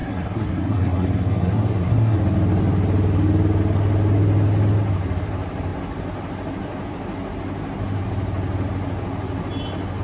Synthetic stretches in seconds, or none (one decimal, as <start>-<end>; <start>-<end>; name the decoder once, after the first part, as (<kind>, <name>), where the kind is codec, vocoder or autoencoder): 0.0-2.2 (codec, SNAC)